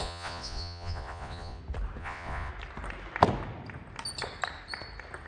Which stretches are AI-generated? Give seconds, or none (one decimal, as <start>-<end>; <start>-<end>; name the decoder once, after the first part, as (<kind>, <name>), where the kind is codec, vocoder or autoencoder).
0.0-1.6 (vocoder, Vocos); 2.0-2.5